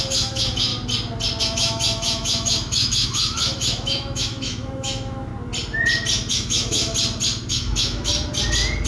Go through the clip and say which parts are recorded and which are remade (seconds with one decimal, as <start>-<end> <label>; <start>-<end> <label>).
0.0-0.7 remade; 0.7-1.4 recorded; 1.4-5.3 remade; 5.3-6.3 recorded; 6.3-6.9 remade; 6.9-7.5 recorded; 7.5-8.1 remade; 8.1-8.9 recorded